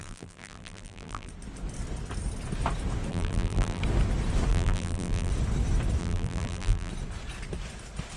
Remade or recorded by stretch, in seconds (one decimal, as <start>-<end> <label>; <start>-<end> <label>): 0.0-1.3 remade; 1.3-3.1 recorded; 3.1-3.8 remade; 3.8-4.5 recorded; 4.5-5.3 remade; 5.3-6.0 recorded; 6.0-6.9 remade; 6.9-8.2 recorded